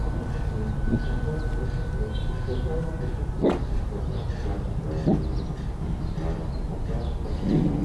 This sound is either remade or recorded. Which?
recorded